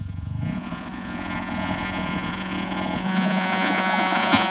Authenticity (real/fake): fake